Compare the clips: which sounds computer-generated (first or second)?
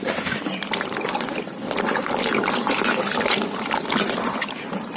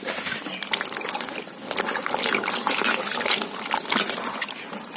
first